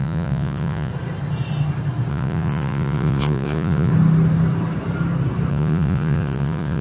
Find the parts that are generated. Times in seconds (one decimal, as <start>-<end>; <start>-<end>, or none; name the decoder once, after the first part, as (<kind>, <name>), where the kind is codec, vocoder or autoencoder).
0.0-0.9 (vocoder, Vocos); 2.1-3.9; 5.5-6.8